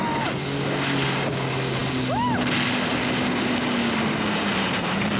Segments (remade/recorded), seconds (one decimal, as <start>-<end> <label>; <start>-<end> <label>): 0.0-5.2 recorded